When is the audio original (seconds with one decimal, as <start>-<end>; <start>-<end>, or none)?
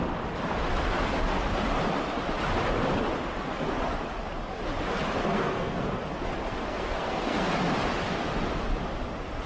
0.0-5.2; 6.0-6.5; 7.5-9.5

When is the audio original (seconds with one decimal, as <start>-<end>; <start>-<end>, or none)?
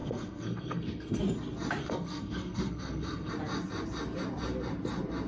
1.2-1.8; 3.3-5.3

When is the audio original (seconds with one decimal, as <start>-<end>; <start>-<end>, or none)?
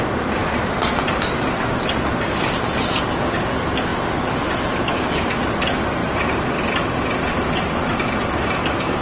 0.0-9.0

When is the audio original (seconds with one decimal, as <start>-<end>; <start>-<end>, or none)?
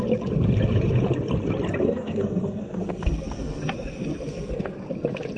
0.0-1.8; 3.6-4.3; 4.8-5.4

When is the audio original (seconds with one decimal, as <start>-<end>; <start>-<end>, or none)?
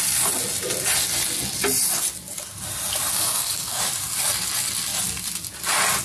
0.0-3.1; 3.8-6.0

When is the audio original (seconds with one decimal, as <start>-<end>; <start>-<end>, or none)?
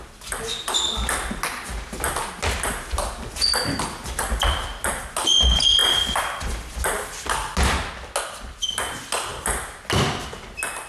0.0-10.9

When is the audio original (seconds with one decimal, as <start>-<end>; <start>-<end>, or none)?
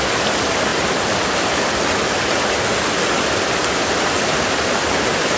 0.0-5.4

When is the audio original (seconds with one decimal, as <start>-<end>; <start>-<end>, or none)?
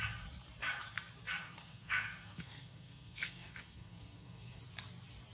0.0-1.4; 4.6-5.3